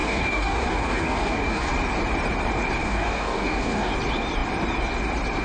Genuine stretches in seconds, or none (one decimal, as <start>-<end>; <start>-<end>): 1.7-2.8; 3.9-5.4

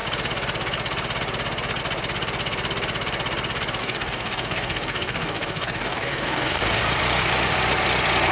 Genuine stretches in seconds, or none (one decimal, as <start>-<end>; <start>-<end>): 0.0-3.8; 6.8-8.3

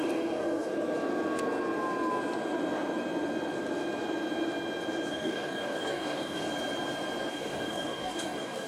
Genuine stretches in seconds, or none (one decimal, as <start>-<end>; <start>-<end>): 0.7-5.1; 6.5-7.3

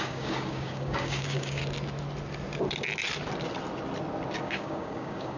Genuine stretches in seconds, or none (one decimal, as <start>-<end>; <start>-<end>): 1.6-4.4

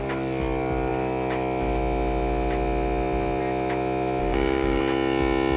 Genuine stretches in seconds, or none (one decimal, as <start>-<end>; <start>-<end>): 0.0-4.2; 4.8-5.6